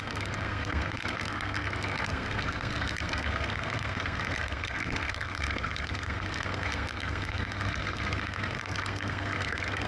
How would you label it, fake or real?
fake